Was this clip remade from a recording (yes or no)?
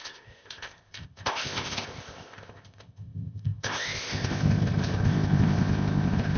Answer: yes